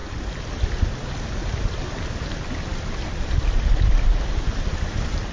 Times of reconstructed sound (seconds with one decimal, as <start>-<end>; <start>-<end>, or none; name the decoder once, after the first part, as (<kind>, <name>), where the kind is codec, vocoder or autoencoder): 2.7-3.4 (vocoder, BigVGAN v2)